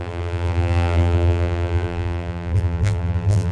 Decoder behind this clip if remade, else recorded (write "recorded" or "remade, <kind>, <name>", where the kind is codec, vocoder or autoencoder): remade, vocoder, BigVGAN v2